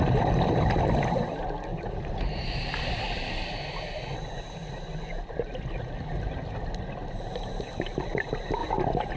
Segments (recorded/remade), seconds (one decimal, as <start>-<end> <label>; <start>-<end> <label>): 0.0-1.7 recorded; 1.7-2.8 remade; 2.8-9.2 recorded